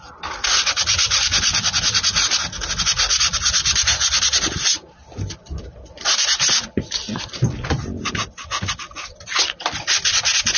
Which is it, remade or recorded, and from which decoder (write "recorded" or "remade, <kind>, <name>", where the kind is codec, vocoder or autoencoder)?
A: recorded